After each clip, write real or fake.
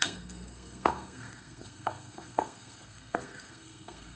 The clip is fake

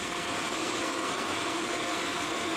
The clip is fake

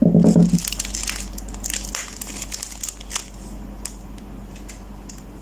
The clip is real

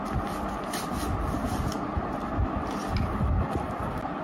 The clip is real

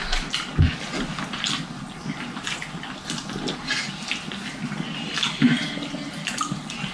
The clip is real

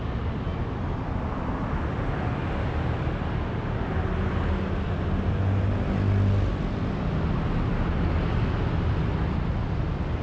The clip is real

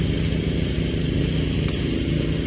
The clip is real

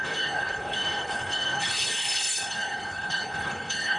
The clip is fake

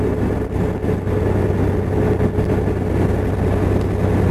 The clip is real